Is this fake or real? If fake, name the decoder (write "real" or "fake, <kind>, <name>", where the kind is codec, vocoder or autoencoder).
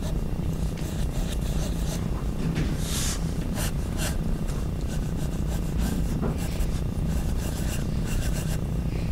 fake, vocoder, BigVGAN v2